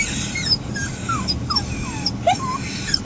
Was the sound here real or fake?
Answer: real